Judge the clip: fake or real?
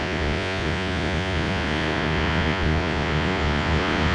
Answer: fake